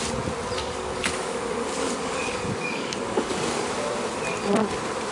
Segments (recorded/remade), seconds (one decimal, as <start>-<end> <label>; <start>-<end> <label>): 0.0-0.6 recorded; 0.6-3.7 remade; 3.7-5.1 recorded

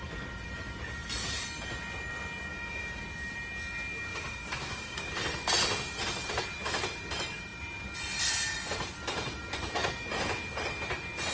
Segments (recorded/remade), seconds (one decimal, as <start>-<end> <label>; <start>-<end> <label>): 0.0-2.5 recorded; 2.5-3.0 remade; 3.0-4.1 recorded; 4.1-5.1 remade; 5.1-11.3 recorded

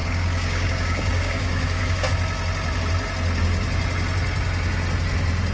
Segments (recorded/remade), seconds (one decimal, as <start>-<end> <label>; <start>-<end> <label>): 0.0-2.1 remade; 2.1-5.5 recorded

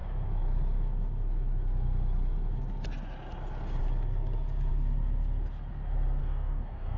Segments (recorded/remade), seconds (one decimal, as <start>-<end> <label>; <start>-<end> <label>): 0.0-6.2 recorded; 6.2-7.0 remade

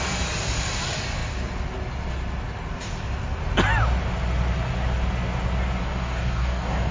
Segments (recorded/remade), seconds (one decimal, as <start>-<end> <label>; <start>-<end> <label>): 0.0-5.8 recorded; 5.8-6.9 remade

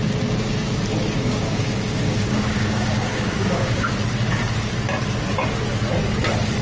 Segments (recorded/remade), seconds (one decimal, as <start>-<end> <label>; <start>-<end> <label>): 0.0-1.2 recorded; 1.2-3.9 remade; 3.9-6.6 recorded

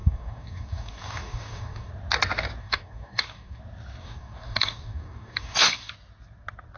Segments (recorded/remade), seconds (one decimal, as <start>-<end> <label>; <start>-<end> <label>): 0.0-1.9 remade; 1.9-2.6 recorded; 2.6-3.6 remade; 3.6-4.0 recorded; 4.0-5.9 remade; 5.9-6.8 recorded